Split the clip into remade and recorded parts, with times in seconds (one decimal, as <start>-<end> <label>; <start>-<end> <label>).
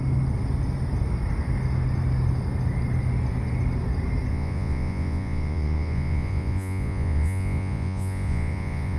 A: 0.0-4.3 recorded; 4.3-9.0 remade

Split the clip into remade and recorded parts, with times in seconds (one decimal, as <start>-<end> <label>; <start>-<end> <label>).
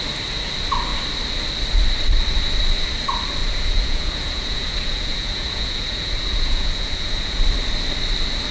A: 0.0-3.4 recorded; 3.4-7.4 remade; 7.4-8.5 recorded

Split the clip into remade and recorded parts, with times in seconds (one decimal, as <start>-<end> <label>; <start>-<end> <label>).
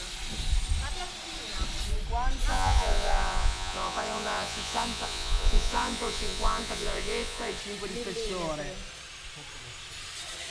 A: 0.0-2.5 recorded; 2.5-7.6 remade; 7.6-10.5 recorded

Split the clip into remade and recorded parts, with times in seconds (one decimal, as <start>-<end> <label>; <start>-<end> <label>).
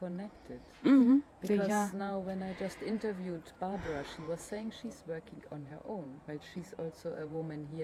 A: 0.0-7.8 remade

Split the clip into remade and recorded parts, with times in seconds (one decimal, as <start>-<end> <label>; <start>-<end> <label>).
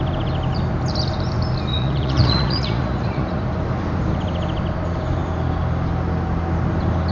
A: 0.0-1.7 recorded; 1.7-3.4 remade; 3.4-7.1 recorded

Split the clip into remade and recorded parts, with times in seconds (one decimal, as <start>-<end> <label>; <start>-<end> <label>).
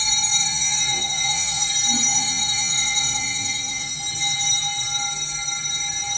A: 0.0-0.4 recorded; 0.4-1.7 remade; 1.7-2.1 recorded; 2.1-4.0 remade; 4.0-6.2 recorded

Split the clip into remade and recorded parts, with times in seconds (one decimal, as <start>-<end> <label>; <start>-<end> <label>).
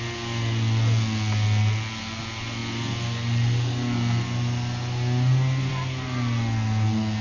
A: 0.0-7.2 recorded